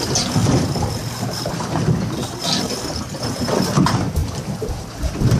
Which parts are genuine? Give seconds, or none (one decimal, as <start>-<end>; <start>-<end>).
0.0-0.4; 1.8-4.2; 5.0-5.4